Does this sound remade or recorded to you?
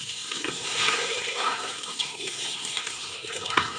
remade